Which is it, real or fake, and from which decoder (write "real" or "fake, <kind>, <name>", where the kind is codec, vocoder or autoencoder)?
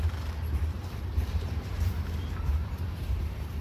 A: fake, vocoder, BigVGAN v2